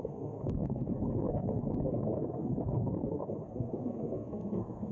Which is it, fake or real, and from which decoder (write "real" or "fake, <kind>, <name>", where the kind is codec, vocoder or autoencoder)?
fake, codec, SNAC